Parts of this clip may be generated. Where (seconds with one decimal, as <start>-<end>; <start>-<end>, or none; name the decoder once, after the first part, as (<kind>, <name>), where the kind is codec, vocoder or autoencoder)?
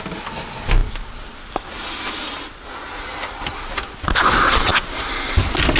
none